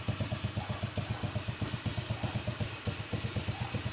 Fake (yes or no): yes